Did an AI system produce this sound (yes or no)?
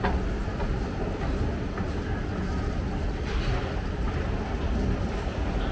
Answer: no